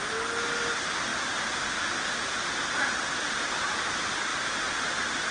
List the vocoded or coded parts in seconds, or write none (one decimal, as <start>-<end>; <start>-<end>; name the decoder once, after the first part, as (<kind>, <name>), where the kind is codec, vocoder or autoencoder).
none